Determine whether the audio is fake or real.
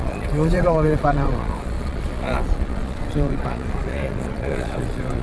fake